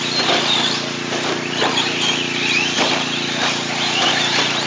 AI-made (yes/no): yes